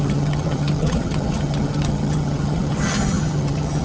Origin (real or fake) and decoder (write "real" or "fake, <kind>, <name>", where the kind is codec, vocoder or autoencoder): fake, vocoder, HiFi-GAN